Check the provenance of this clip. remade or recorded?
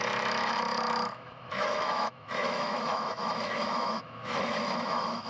remade